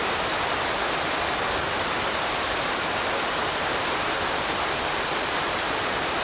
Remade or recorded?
recorded